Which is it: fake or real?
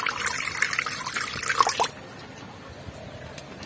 real